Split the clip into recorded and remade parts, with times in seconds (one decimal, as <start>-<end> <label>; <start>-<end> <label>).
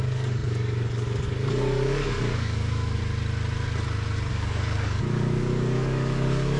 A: 0.0-3.0 remade; 3.0-4.3 recorded; 4.3-6.6 remade